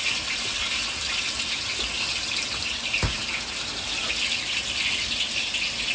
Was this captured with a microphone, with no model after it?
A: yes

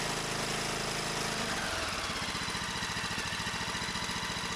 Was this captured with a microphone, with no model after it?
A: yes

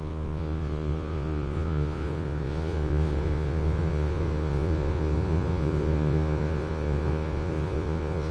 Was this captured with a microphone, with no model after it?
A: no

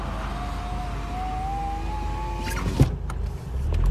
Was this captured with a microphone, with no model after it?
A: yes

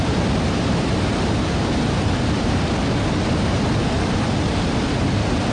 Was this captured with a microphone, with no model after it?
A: yes